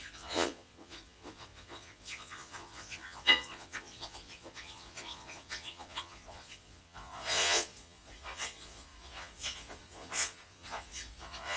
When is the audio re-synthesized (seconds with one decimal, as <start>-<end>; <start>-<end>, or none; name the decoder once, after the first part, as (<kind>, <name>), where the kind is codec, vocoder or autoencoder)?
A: 0.0-11.6 (vocoder, Vocos)